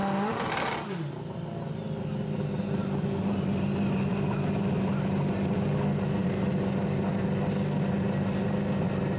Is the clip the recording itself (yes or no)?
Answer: yes